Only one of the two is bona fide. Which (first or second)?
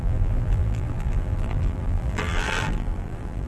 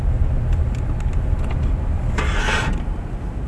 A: second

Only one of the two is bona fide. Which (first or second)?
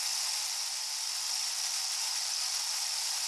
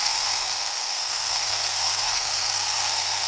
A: first